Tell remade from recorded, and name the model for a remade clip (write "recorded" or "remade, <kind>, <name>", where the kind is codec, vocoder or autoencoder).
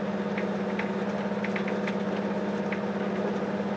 recorded